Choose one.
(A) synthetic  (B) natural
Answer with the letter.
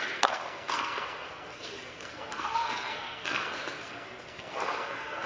A